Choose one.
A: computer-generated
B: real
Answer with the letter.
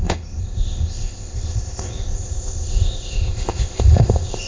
A